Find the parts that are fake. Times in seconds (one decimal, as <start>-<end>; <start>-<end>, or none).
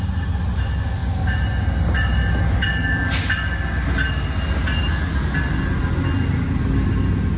none